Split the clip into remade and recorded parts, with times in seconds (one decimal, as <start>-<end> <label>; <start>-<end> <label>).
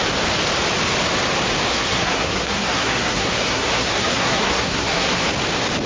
0.0-1.7 recorded; 1.7-5.2 remade; 5.2-5.9 recorded